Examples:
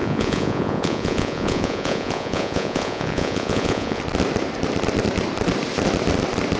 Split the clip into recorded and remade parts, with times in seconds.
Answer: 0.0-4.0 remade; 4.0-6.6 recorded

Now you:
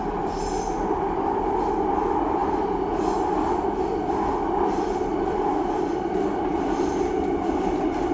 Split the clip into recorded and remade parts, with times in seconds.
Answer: 0.0-8.1 recorded

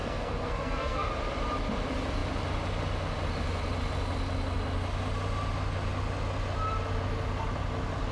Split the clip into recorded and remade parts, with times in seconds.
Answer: 0.0-1.1 remade; 1.1-8.1 recorded

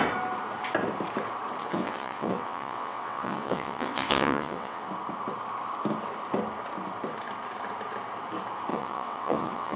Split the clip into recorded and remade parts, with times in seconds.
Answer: 0.0-1.6 recorded; 1.6-4.8 remade; 4.8-8.7 recorded; 8.7-9.8 remade

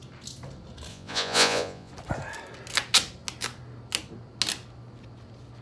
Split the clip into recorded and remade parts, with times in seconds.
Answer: 0.0-0.9 recorded; 0.9-1.9 remade; 1.9-5.6 recorded

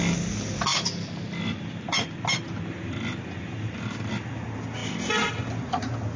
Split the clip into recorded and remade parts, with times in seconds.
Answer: 0.0-6.2 recorded

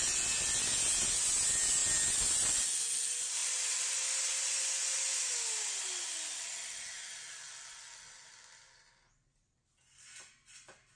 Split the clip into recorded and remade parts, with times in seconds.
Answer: 0.0-11.0 recorded